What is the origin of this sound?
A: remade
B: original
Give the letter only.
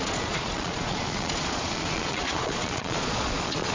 A